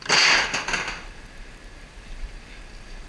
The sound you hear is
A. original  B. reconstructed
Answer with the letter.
A